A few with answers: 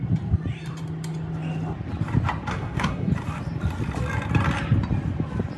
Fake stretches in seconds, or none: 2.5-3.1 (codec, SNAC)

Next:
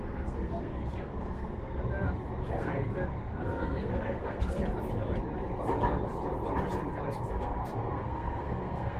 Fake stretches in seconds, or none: 0.0-1.8 (codec, SNAC); 2.4-4.6; 7.3-9.0

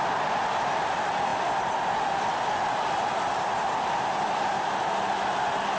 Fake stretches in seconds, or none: none

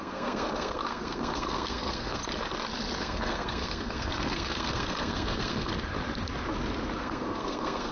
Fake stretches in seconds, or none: 0.0-2.2 (codec, SNAC); 3.0-5.7; 7.0-7.9